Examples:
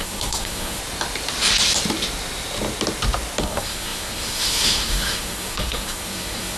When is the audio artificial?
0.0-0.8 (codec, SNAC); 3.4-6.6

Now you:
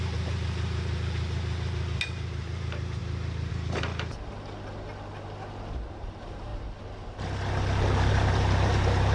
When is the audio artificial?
0.0-3.9 (vocoder, BigVGAN v2); 5.9-6.5; 8.1-9.1

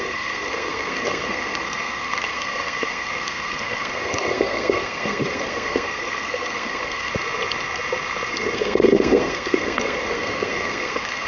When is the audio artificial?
0.0-7.1 (codec, SNAC); 8.3-11.3

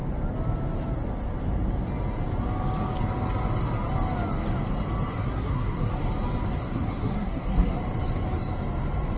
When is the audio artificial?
5.1-5.9 (codec, SNAC); 6.6-7.8